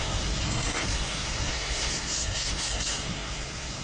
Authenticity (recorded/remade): remade